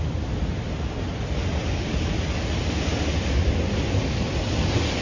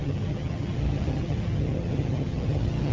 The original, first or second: first